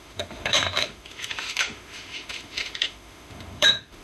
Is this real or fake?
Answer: fake